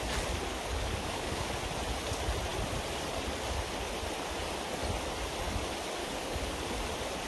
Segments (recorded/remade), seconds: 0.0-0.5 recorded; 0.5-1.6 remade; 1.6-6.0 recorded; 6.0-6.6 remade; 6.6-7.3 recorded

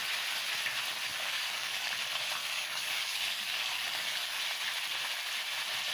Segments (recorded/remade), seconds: 0.0-1.1 recorded; 1.1-1.9 remade; 1.9-2.4 recorded; 2.4-4.4 remade; 4.4-5.9 recorded

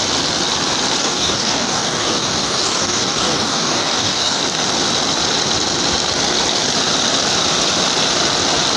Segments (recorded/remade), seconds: 0.0-1.0 recorded; 1.0-4.4 remade; 4.4-8.8 recorded

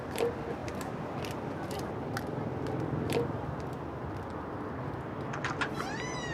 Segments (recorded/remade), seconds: 0.0-6.3 recorded

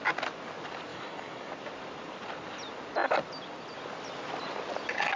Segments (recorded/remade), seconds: 0.0-0.9 recorded; 0.9-1.5 remade; 1.5-5.2 recorded